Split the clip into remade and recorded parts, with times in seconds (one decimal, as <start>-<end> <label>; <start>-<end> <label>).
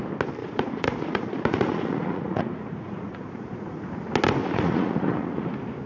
0.0-0.4 recorded; 0.4-3.9 remade; 3.9-4.4 recorded; 4.4-5.5 remade; 5.5-5.9 recorded